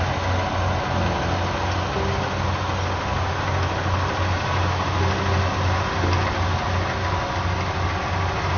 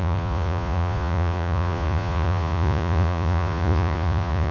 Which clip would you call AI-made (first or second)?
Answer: second